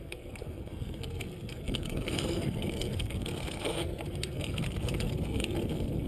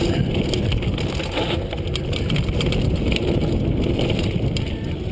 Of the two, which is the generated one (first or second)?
first